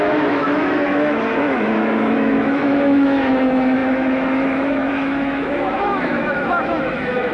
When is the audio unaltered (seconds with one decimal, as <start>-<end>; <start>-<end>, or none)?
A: none